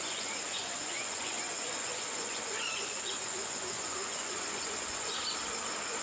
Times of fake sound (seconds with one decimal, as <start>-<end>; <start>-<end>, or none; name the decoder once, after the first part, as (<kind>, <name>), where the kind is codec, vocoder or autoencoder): 0.0-5.2 (vocoder, Vocos)